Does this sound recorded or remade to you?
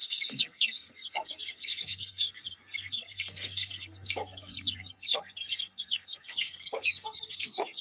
remade